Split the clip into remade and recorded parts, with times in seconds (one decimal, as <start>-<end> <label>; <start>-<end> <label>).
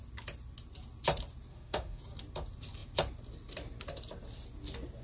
0.0-1.5 recorded; 1.5-2.0 remade; 2.0-5.0 recorded